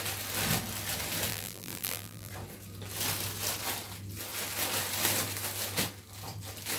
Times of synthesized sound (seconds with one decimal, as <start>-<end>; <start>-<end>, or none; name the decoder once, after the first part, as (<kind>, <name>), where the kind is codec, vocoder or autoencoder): 1.3-2.3 (vocoder, BigVGAN v2)